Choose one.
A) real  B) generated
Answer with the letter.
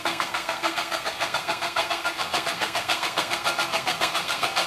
B